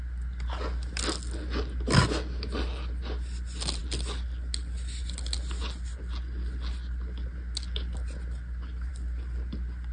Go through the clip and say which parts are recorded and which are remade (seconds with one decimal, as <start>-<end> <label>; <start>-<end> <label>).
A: 0.0-9.9 recorded